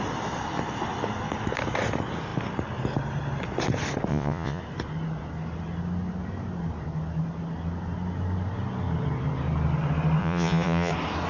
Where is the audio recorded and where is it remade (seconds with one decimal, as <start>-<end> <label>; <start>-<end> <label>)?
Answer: 0.0-4.1 recorded; 4.1-4.6 remade; 4.6-10.2 recorded; 10.2-10.9 remade; 10.9-11.3 recorded